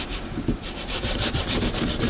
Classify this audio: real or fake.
fake